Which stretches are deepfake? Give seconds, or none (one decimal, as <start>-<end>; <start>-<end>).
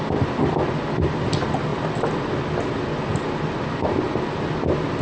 none